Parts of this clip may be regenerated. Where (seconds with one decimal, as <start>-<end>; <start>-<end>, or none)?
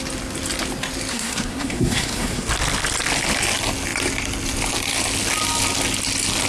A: 1.1-2.5